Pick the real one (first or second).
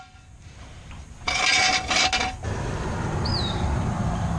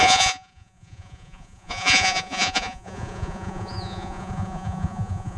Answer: first